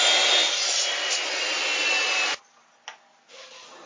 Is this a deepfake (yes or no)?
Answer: no